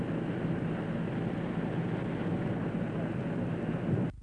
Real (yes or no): yes